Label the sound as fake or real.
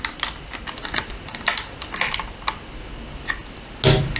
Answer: real